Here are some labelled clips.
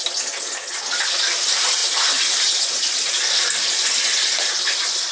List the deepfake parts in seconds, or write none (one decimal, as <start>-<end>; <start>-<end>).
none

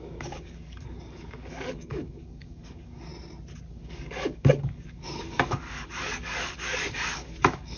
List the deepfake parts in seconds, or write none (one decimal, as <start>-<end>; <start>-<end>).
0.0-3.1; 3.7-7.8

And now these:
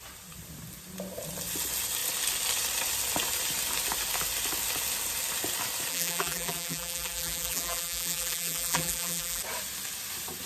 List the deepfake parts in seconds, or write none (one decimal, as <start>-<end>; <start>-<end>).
5.9-9.4

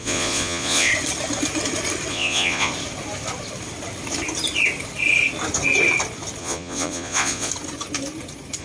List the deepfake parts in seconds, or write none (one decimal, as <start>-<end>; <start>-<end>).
0.0-0.9; 2.1-2.7; 6.4-7.5